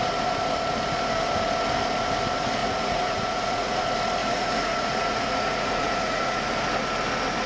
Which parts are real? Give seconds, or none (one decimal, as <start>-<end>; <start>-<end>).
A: 0.0-2.6; 3.8-4.2; 6.4-7.5